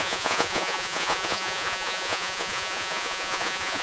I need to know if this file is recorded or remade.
remade